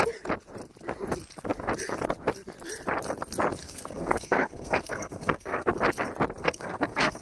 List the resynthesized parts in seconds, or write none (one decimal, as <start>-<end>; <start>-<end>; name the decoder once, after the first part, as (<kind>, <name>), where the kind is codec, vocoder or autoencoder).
3.6-5.7 (codec, SNAC); 6.4-7.2